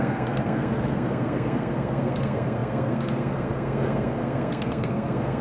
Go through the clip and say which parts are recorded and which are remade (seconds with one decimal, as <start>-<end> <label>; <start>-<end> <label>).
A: 0.0-5.4 remade